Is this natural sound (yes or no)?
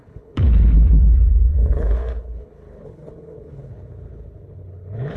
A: no